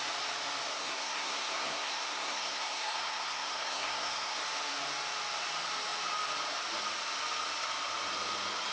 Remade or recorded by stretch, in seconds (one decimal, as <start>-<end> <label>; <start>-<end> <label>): 0.0-0.7 recorded; 0.7-4.4 remade; 4.4-8.7 recorded